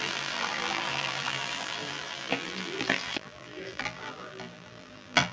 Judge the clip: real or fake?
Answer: fake